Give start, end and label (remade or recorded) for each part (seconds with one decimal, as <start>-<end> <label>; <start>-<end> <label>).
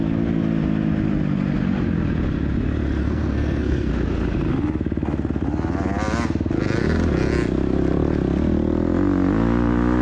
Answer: 0.0-3.0 recorded; 3.0-3.9 remade; 3.9-10.0 recorded